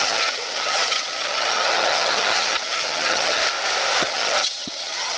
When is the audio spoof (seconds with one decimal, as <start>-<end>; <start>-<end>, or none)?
0.0-3.4; 4.0-5.2